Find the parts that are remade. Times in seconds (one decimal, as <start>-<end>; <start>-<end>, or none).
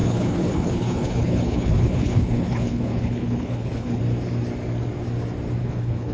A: 0.0-4.0; 5.6-6.1